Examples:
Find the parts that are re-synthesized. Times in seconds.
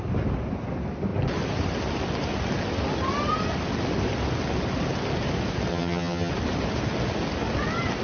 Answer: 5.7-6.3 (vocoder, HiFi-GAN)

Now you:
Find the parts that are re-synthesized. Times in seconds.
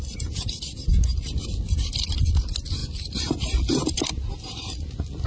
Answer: none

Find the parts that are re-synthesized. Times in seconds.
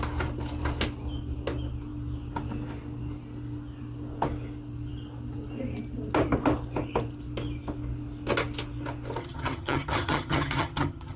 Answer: 9.2-11.2 (vocoder, HiFi-GAN)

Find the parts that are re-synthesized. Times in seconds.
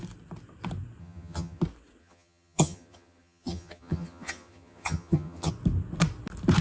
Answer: 1.0-1.6 (vocoder, HiFi-GAN); 2.0-5.5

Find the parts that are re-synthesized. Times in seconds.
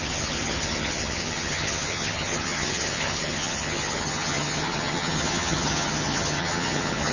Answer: 0.0-7.1 (vocoder, HiFi-GAN)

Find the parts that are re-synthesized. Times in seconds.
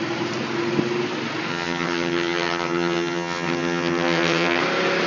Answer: 1.5-4.6 (vocoder, HiFi-GAN)